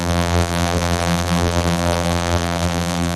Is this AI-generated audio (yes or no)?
yes